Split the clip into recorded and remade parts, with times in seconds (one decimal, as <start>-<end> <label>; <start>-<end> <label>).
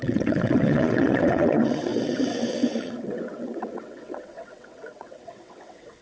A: 0.0-6.0 remade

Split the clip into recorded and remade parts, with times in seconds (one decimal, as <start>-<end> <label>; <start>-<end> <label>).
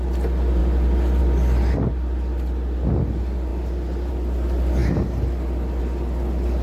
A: 0.0-6.6 recorded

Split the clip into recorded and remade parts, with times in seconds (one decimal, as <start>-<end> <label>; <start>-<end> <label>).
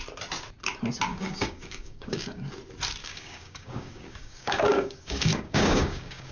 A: 0.0-1.1 recorded; 1.1-2.5 remade; 2.5-3.0 recorded; 3.0-6.3 remade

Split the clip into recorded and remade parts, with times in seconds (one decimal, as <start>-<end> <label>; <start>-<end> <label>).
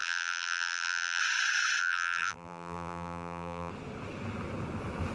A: 0.0-1.2 remade; 1.2-1.8 recorded; 1.8-3.7 remade; 3.7-5.1 recorded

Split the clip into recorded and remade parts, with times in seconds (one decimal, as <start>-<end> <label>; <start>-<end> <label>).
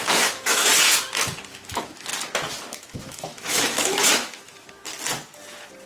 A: 0.0-0.7 remade; 0.7-1.5 recorded; 1.5-2.1 remade; 2.1-2.7 recorded; 2.7-4.9 remade; 4.9-5.9 recorded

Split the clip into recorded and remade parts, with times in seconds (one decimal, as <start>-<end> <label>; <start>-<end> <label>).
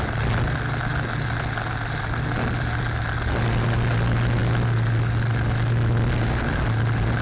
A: 0.0-7.2 recorded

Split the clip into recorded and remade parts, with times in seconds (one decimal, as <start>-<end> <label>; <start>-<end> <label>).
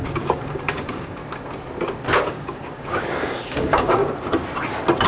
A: 0.0-1.2 remade; 1.2-2.2 recorded; 2.2-4.0 remade; 4.0-5.1 recorded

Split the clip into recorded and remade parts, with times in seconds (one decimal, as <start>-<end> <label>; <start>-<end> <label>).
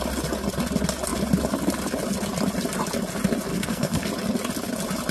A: 0.0-3.5 recorded; 3.5-4.1 remade; 4.1-5.1 recorded